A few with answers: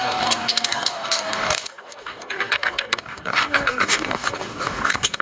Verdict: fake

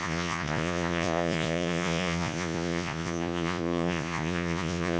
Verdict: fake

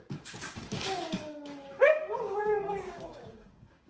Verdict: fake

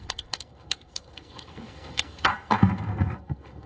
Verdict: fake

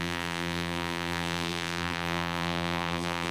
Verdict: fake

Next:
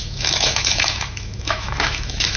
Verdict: fake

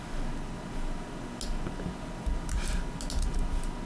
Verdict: real